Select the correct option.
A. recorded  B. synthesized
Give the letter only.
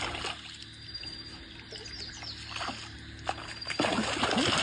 A